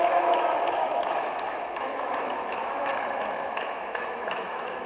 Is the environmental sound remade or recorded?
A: remade